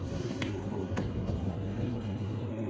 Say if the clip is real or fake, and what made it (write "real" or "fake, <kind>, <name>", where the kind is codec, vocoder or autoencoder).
fake, codec, SNAC